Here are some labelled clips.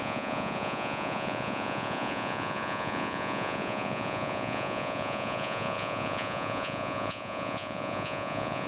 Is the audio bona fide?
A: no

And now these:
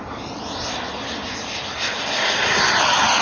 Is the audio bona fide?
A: yes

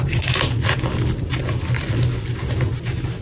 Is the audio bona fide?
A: yes